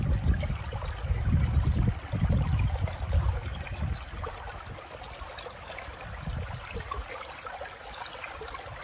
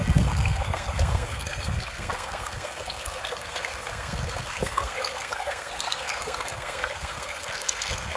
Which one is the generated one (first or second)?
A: second